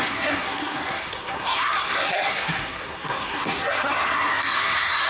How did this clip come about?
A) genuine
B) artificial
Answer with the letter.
B